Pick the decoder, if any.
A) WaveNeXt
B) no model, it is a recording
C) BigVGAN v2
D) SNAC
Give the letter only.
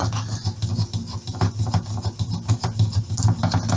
B